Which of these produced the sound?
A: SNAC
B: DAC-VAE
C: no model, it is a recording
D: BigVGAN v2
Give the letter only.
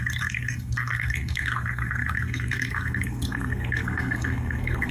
A